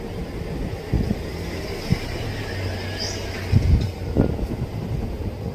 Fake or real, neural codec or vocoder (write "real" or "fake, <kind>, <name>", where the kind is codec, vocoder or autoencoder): real